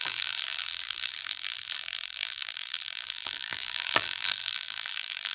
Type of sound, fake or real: fake